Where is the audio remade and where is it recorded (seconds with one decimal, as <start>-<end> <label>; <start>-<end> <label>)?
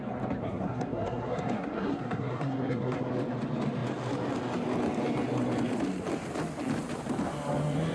0.0-0.4 recorded; 0.4-3.1 remade; 3.1-7.9 recorded